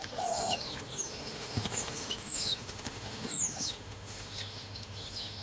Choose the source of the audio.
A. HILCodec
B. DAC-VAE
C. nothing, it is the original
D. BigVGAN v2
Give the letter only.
B